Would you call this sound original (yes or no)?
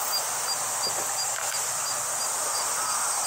yes